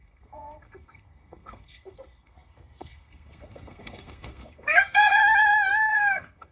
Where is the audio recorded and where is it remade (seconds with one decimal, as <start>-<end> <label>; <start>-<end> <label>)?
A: 0.0-5.2 remade; 5.2-5.9 recorded; 5.9-6.5 remade